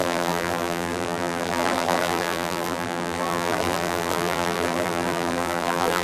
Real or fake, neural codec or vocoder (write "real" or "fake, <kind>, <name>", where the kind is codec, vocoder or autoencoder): fake, vocoder, BigVGAN v2